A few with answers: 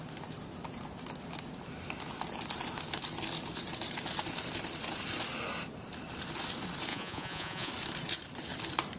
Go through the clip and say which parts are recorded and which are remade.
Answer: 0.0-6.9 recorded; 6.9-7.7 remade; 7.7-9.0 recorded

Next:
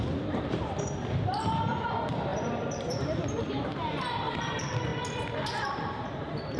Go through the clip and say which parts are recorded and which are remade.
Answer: 0.0-4.9 remade; 4.9-5.6 recorded; 5.6-6.6 remade

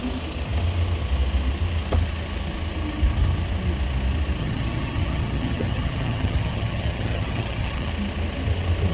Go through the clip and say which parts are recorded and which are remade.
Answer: 0.0-4.4 recorded; 4.4-7.9 remade; 7.9-8.9 recorded

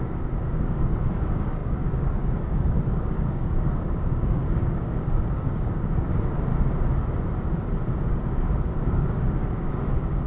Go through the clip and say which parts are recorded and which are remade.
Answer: 0.0-6.5 remade; 6.5-8.1 recorded; 8.1-10.3 remade